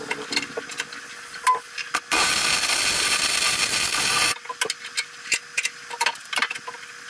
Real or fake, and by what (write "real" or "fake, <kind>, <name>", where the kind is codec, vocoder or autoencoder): real